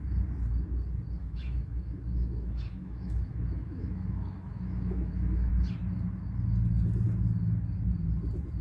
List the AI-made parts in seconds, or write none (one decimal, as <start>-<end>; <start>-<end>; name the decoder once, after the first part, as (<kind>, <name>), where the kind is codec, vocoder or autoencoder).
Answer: 1.2-5.5 (autoencoder, DAC-VAE)